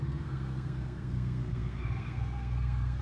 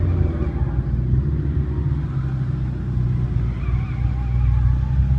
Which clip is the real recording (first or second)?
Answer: second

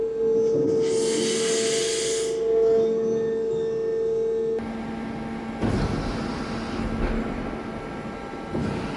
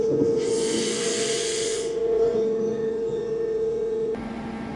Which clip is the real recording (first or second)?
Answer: first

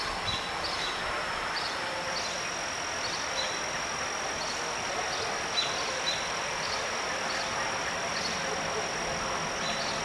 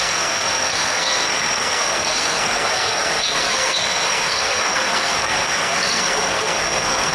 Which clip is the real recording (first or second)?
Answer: first